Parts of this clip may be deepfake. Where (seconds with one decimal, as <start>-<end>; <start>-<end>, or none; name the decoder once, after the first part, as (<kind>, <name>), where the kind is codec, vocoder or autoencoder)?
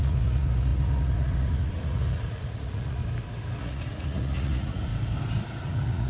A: 0.0-3.0 (vocoder, Vocos); 3.6-4.9; 5.6-6.1